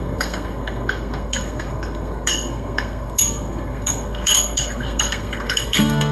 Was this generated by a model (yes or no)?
yes